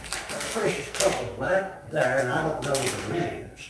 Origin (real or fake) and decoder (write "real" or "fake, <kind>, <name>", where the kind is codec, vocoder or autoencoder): fake, codec, SNAC